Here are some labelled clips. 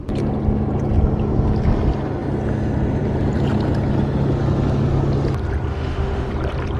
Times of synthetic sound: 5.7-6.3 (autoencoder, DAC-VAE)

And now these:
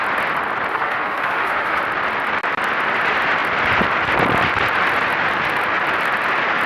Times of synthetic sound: 0.7-1.8 (autoencoder, DAC-VAE)

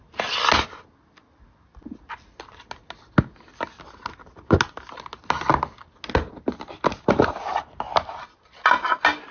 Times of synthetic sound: none

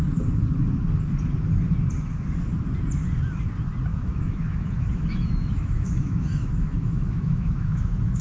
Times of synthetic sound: 3.9-8.2 (autoencoder, DAC-VAE)

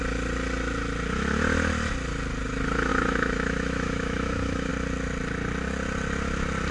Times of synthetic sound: 2.9-4.7 (autoencoder, DAC-VAE)

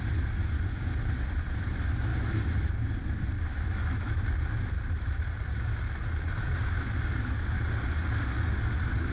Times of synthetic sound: 2.1-2.7 (autoencoder, DAC-VAE); 3.5-4.2